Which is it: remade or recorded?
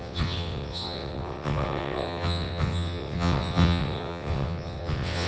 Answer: remade